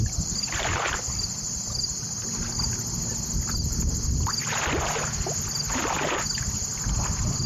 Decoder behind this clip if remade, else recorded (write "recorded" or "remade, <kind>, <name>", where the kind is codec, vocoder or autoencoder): recorded